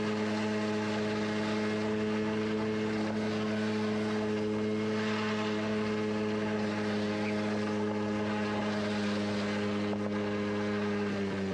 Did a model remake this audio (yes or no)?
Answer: no